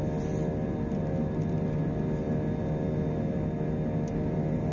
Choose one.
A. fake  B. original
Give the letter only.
B